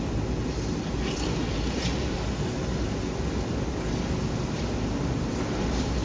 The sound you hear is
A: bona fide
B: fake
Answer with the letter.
A